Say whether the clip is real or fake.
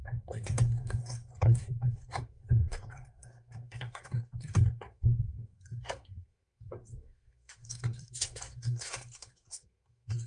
fake